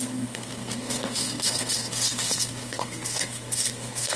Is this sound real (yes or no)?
no